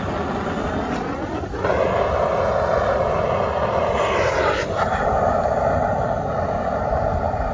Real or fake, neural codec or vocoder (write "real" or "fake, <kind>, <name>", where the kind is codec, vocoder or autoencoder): real